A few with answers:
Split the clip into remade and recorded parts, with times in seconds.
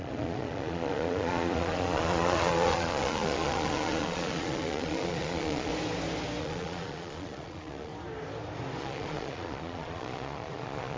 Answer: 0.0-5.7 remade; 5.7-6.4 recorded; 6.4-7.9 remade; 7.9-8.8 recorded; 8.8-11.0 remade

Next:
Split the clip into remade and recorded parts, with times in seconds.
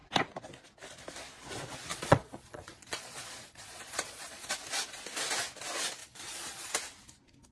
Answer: 0.0-1.9 recorded; 1.9-4.5 remade; 4.5-6.0 recorded; 6.0-6.7 remade; 6.7-7.5 recorded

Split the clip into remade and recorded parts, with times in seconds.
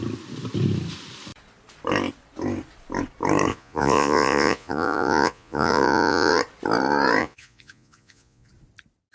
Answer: 0.0-3.5 recorded; 3.5-6.3 remade; 6.3-7.2 recorded; 7.2-8.5 remade; 8.5-9.1 recorded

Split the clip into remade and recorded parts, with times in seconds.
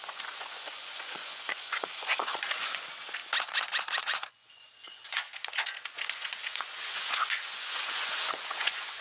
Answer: 0.0-3.2 remade; 3.2-4.0 recorded; 4.0-9.0 remade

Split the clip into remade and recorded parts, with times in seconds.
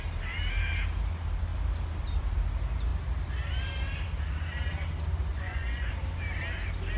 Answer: 0.0-5.3 recorded; 5.3-5.9 remade; 5.9-7.0 recorded